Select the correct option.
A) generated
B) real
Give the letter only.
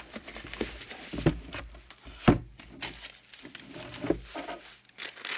B